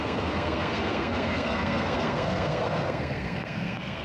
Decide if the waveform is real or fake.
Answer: fake